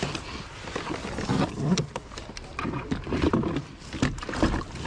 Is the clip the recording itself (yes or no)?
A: yes